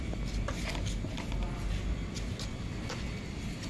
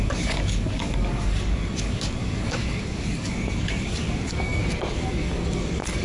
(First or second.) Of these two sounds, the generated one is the second